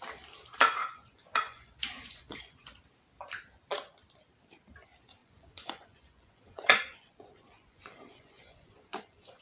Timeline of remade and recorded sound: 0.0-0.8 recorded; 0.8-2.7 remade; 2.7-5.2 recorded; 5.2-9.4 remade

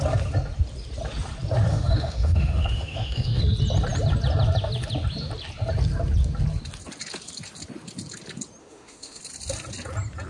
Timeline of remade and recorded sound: 0.0-1.7 recorded; 1.7-3.4 remade; 3.4-8.6 recorded; 8.6-9.2 remade; 9.2-10.3 recorded

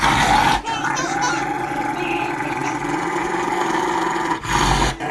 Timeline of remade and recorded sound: 0.0-5.1 recorded

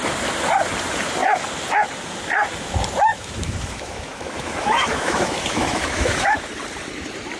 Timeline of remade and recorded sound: 0.0-3.1 recorded; 3.1-6.5 remade; 6.5-7.4 recorded